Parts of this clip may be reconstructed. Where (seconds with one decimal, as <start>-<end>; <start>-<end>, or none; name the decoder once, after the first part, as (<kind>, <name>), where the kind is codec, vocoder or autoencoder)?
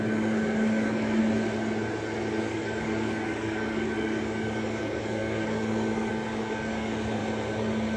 0.0-1.2 (codec, DAC); 2.4-7.2